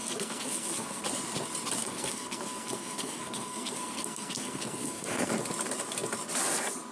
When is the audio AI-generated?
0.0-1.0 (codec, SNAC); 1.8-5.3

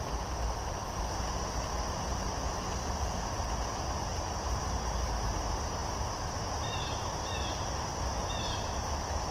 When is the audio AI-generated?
none

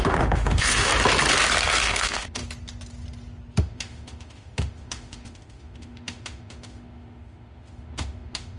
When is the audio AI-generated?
0.0-0.9 (autoencoder, DAC-VAE); 1.8-2.4; 3.6-8.6

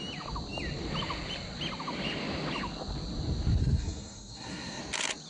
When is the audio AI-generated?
3.6-4.8 (codec, SNAC)

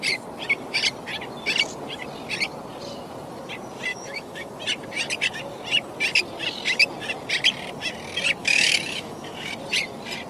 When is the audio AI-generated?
3.9-4.6 (autoencoder, DAC-VAE); 8.4-9.5

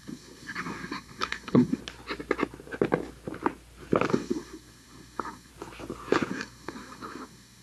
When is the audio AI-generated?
0.0-1.8 (codec, SNAC); 4.1-5.5; 6.3-7.6